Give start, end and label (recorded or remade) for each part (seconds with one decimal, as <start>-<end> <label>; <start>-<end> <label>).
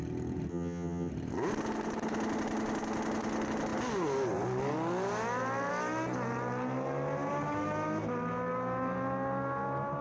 0.0-0.5 recorded; 0.5-1.1 remade; 1.1-10.0 recorded